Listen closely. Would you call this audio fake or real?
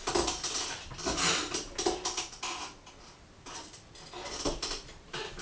real